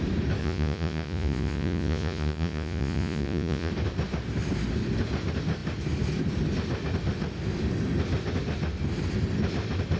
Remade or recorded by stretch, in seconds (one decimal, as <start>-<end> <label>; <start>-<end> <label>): 0.0-0.4 recorded; 0.4-3.7 remade; 3.7-10.0 recorded